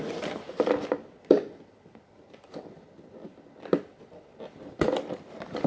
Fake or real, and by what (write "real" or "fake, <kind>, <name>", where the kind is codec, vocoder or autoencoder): real